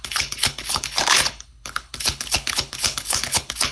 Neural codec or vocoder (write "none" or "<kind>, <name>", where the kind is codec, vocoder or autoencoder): codec, HILCodec